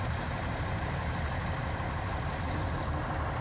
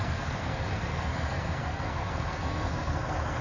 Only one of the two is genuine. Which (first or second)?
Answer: first